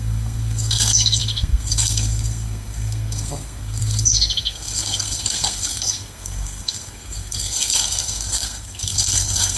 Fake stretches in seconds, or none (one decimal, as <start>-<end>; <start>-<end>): 0.0-9.6